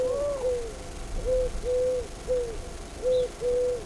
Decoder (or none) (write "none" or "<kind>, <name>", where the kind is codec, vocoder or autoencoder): none